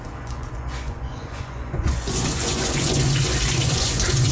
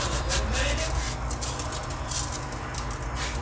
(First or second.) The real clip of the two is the second